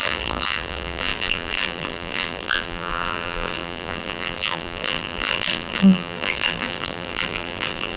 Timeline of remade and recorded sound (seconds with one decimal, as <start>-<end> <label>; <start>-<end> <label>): 0.0-8.0 remade